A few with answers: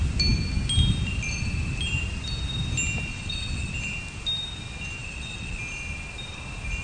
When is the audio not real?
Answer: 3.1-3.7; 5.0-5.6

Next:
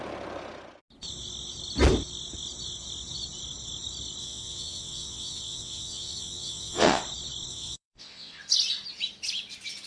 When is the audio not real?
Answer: 4.2-7.0; 7.5-8.4

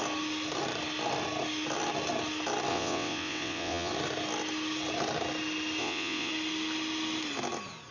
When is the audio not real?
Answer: 2.7-3.9; 5.8-6.3

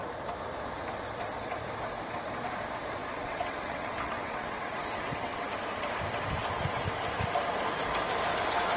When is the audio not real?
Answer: 3.0-5.5

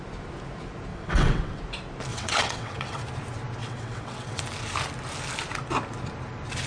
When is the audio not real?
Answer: 0.9-1.6; 2.1-3.0; 3.6-4.4

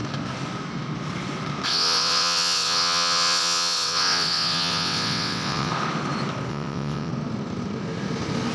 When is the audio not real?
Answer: 1.7-5.7; 6.5-7.1

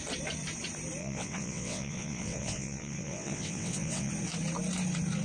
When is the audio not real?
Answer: 1.0-4.1